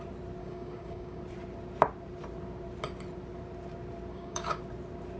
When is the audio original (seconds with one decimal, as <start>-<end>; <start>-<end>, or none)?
0.0-0.4; 1.2-4.1; 4.6-5.2

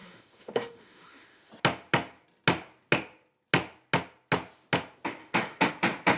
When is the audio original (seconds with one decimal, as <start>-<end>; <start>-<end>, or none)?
1.5-5.2; 5.7-6.2

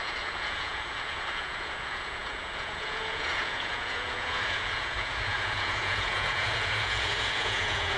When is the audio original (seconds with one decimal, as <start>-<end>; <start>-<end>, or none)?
none

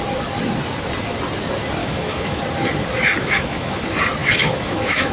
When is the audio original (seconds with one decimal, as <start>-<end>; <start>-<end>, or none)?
0.0-1.8; 2.4-3.2; 3.8-4.2